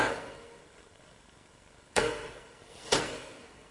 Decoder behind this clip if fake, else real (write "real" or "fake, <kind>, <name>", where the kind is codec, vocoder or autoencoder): fake, codec, SNAC